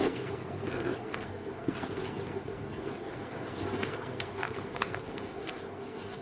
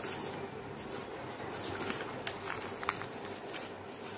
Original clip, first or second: second